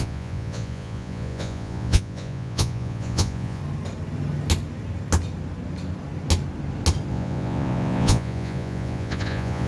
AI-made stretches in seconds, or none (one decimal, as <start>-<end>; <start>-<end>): 0.0-3.6; 7.1-9.7